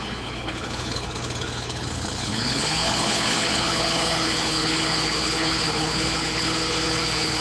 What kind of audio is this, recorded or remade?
remade